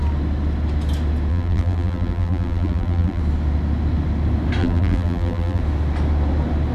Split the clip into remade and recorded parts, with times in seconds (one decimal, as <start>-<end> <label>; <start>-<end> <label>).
0.0-1.3 recorded; 1.3-3.2 remade; 3.2-4.6 recorded; 4.6-5.6 remade; 5.6-6.7 recorded